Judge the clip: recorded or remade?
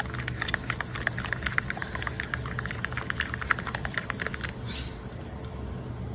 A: recorded